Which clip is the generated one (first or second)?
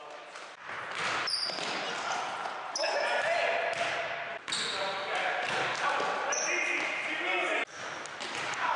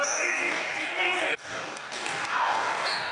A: second